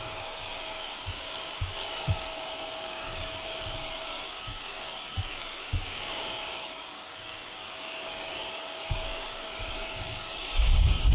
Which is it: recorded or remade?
remade